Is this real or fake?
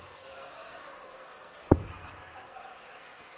fake